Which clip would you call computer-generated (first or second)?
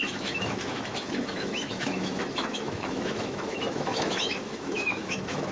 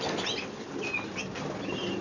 first